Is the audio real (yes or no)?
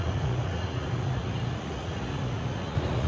no